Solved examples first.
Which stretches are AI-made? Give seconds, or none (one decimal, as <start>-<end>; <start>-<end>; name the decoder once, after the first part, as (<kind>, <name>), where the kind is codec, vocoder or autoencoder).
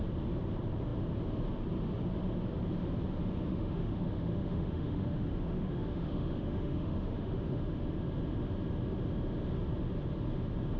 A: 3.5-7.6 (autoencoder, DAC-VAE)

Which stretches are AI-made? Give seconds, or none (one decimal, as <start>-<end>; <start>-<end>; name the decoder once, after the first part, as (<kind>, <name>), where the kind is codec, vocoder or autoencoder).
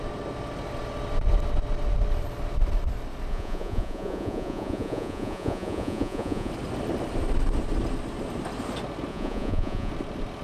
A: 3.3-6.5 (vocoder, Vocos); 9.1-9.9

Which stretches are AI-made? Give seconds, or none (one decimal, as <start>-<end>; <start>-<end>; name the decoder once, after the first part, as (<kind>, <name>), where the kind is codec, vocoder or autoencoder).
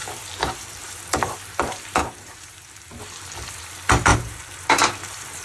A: 2.0-3.0 (vocoder, BigVGAN v2); 4.1-4.7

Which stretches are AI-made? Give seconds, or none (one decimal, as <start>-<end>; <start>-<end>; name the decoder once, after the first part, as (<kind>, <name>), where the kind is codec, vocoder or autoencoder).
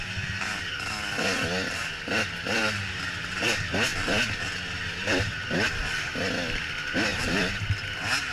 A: none